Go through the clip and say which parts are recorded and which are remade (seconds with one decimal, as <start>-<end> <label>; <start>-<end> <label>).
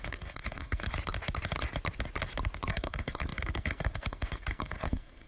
0.0-0.9 remade; 0.9-2.7 recorded; 2.7-5.3 remade